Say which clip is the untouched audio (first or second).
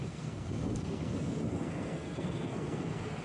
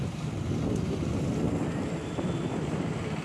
second